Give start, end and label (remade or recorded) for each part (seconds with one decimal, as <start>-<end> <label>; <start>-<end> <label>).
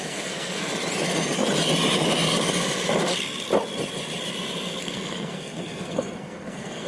0.0-0.7 remade; 0.7-4.8 recorded; 4.8-6.9 remade